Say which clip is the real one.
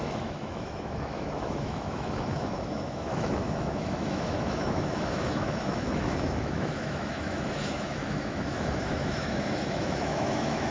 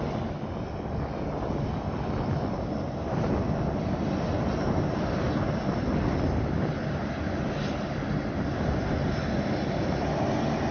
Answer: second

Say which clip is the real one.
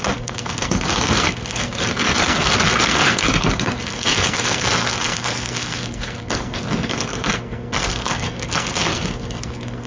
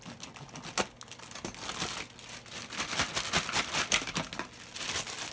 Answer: second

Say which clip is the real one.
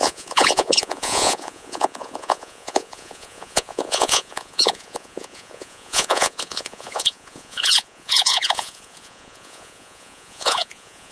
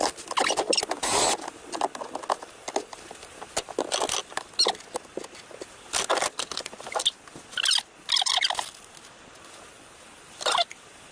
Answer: second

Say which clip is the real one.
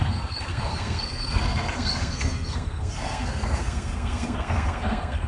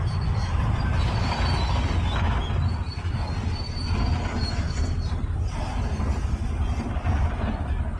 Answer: second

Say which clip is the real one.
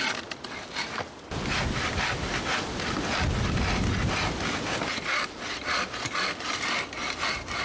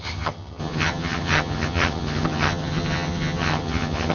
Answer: first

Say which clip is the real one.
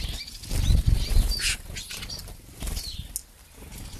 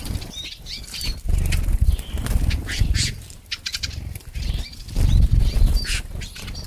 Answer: first